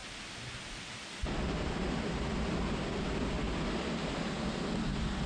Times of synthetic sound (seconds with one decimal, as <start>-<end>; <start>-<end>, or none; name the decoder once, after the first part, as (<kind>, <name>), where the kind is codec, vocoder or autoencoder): none

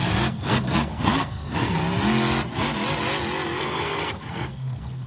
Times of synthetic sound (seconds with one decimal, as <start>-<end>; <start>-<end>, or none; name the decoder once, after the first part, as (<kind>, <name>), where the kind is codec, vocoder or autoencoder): 0.0-1.8 (codec, SNAC); 3.6-5.1

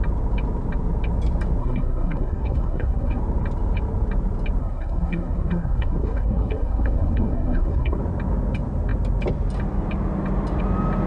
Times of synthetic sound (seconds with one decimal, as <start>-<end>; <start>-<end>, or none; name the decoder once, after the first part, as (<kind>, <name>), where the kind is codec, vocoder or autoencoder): 1.6-3.2 (codec, SNAC); 4.6-8.0

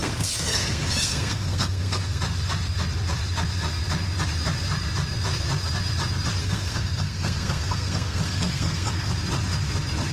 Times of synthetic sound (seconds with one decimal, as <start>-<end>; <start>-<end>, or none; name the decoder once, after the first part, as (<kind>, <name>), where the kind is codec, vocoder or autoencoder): 0.0-2.2 (codec, SNAC); 6.4-9.1

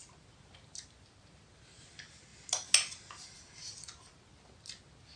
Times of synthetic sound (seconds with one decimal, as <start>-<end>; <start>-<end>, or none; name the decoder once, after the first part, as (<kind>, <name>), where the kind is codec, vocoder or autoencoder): none

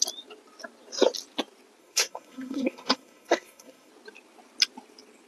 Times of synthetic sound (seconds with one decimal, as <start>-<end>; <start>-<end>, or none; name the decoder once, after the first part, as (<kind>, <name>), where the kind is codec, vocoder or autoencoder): 1.8-3.9 (codec, SNAC)